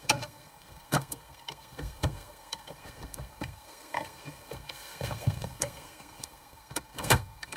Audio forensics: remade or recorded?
remade